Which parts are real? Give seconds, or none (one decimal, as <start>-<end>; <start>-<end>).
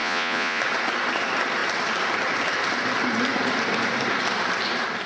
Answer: 0.6-5.1